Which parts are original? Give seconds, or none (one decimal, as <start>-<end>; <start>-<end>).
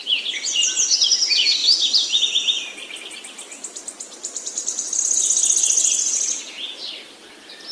0.0-7.7